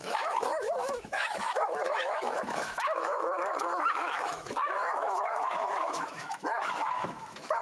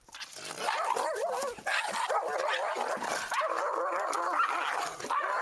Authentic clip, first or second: second